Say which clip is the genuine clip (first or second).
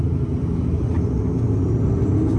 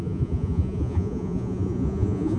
first